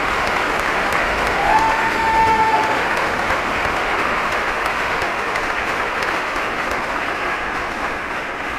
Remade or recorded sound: remade